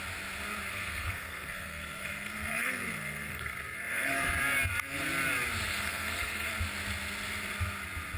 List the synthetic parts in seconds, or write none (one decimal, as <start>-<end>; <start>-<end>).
0.7-4.4; 5.7-6.5